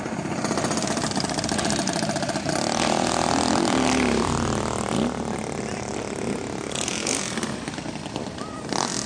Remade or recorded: recorded